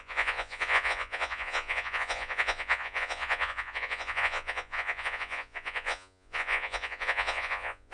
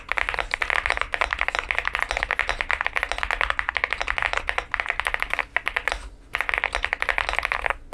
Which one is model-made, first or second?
first